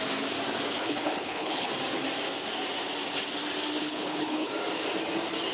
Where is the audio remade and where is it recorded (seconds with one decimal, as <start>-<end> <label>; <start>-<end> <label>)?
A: 0.0-0.7 recorded; 0.7-1.7 remade; 1.7-3.8 recorded; 3.8-4.5 remade; 4.5-5.5 recorded